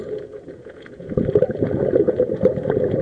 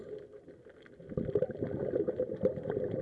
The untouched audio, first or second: second